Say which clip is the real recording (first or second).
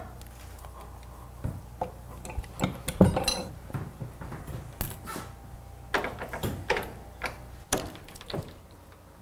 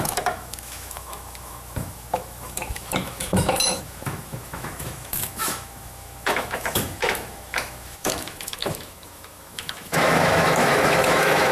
first